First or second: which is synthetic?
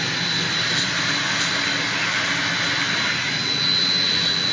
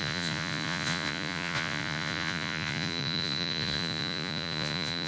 second